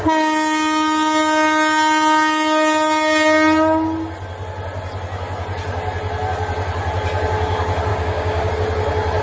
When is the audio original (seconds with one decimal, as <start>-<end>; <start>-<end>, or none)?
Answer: 0.0-7.9; 8.5-9.2